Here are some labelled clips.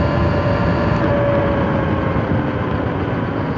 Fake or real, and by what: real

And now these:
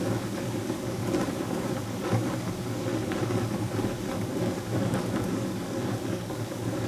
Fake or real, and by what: fake, codec, DAC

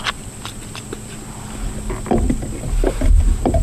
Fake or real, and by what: real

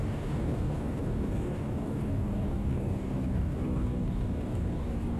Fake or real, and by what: fake, codec, DAC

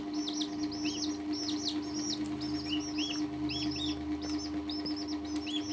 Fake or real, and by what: real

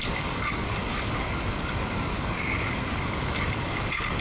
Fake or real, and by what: fake, codec, DAC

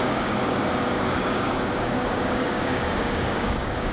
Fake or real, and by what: fake, codec, DAC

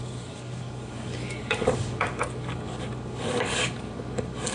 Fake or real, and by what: fake, codec, DAC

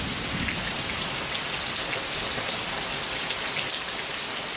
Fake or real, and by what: real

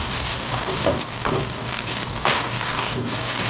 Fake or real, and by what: fake, codec, DAC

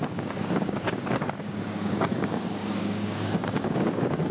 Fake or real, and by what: fake, codec, DAC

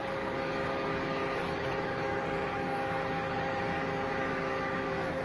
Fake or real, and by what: fake, codec, DAC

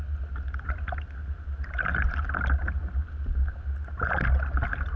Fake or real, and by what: real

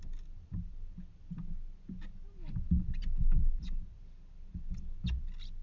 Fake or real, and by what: real